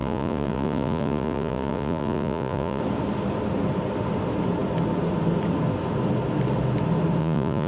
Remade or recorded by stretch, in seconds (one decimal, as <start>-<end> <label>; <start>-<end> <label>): 0.0-2.8 remade; 2.8-7.2 recorded; 7.2-7.7 remade